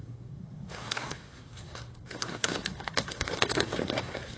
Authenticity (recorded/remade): remade